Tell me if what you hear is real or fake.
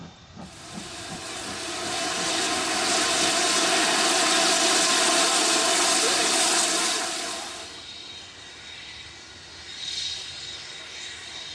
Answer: real